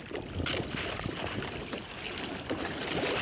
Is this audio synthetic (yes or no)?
no